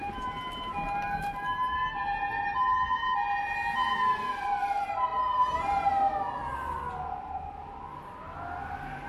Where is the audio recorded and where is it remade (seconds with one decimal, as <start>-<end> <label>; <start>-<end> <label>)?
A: 0.0-9.1 recorded